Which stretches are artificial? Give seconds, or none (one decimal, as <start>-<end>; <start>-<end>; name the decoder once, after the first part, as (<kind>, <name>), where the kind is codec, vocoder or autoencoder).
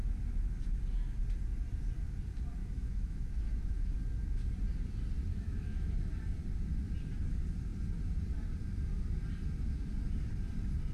2.6-3.9 (autoencoder, DAC-VAE); 5.3-5.9